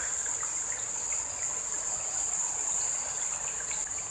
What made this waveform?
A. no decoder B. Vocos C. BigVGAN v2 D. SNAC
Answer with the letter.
A